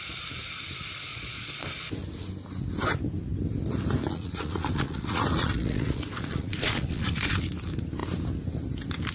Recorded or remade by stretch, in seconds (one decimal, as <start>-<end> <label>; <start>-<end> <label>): 0.0-1.1 recorded; 1.1-1.7 remade; 1.7-4.0 recorded; 4.0-7.4 remade; 7.4-9.1 recorded